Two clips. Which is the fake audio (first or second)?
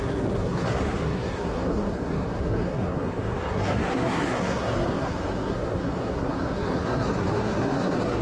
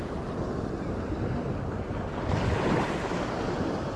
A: first